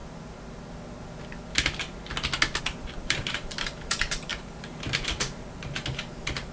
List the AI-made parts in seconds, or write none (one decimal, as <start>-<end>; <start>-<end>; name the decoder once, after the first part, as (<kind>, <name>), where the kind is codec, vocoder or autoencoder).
2.6-6.5 (vocoder, BigVGAN v2)